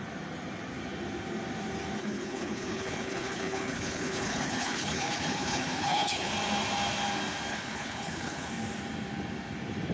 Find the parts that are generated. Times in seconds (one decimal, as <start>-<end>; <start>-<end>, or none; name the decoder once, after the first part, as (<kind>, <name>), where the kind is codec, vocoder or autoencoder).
2.0-6.3 (codec, HILCodec); 7.5-8.5